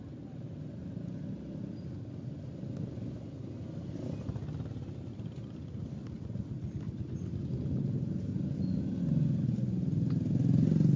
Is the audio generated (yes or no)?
no